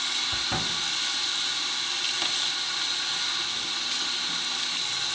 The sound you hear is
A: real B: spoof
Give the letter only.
A